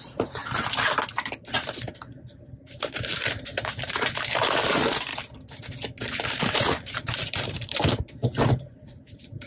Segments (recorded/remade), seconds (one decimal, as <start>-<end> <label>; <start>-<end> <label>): 0.0-0.4 remade; 0.4-1.6 recorded; 1.6-5.1 remade; 5.1-6.0 recorded; 6.0-9.5 remade